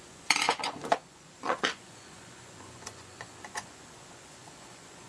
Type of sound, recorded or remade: remade